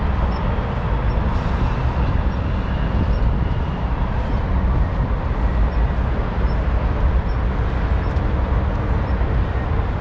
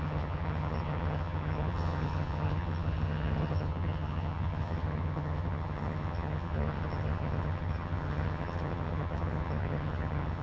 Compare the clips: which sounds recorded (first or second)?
first